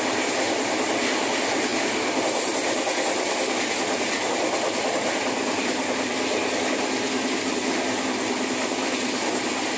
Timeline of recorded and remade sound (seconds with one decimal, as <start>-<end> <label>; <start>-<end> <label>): 0.0-9.8 recorded

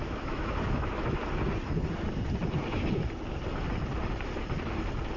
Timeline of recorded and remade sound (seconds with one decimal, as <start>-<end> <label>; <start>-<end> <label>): 0.0-1.2 remade; 1.2-5.2 recorded